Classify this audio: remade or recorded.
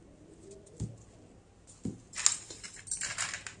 recorded